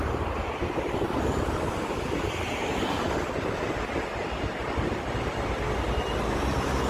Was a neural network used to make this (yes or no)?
no